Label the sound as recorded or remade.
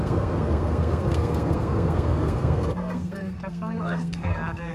remade